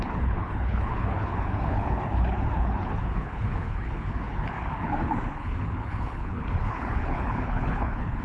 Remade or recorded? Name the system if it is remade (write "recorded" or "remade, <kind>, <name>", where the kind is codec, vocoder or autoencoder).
remade, codec, HILCodec